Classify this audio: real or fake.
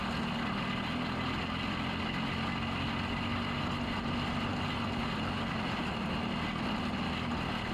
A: real